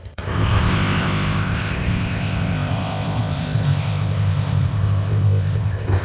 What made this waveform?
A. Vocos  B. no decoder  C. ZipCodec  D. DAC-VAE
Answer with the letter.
C